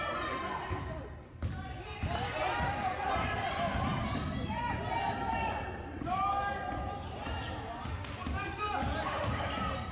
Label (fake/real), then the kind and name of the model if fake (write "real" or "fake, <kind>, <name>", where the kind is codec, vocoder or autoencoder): real